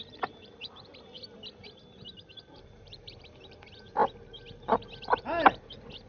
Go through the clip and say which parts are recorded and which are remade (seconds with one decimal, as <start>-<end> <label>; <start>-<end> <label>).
0.0-0.9 remade; 0.9-2.4 recorded; 2.4-4.0 remade; 4.0-5.0 recorded; 5.0-6.1 remade